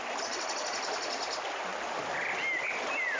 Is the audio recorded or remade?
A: recorded